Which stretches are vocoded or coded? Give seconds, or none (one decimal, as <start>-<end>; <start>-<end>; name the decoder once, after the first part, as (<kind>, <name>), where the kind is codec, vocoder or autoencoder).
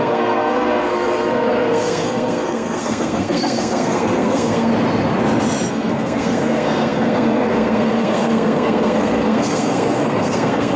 0.0-4.7 (codec, SNAC); 5.7-10.8